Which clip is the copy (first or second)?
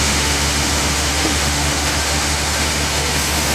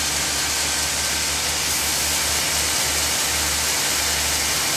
first